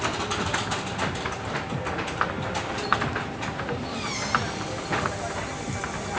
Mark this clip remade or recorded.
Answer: recorded